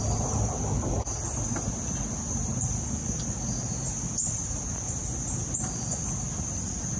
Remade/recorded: recorded